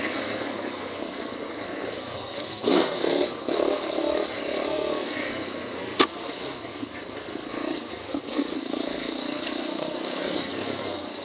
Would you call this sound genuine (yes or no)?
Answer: no